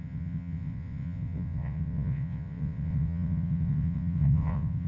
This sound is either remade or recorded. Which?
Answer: remade